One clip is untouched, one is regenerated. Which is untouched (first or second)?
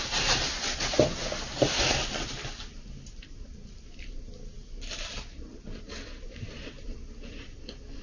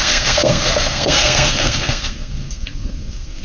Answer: first